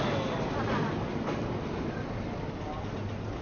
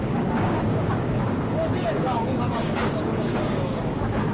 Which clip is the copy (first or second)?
second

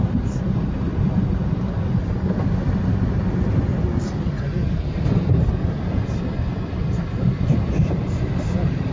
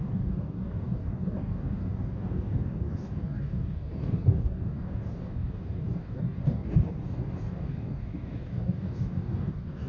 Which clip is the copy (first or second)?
second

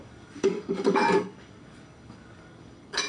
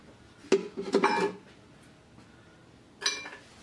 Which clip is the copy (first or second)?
first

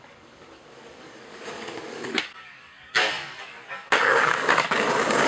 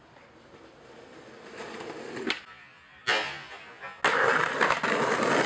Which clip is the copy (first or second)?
first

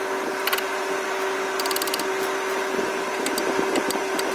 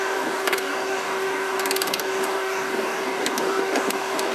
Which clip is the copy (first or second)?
second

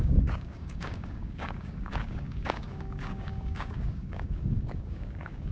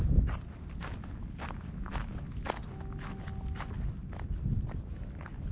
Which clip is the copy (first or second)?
first